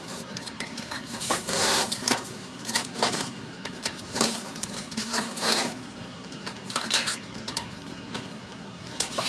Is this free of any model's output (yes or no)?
no